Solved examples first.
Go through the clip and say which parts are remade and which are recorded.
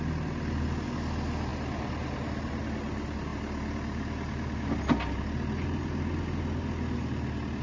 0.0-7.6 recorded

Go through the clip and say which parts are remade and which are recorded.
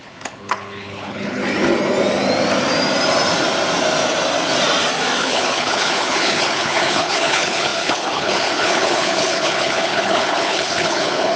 0.0-1.4 remade; 1.4-5.2 recorded; 5.2-11.4 remade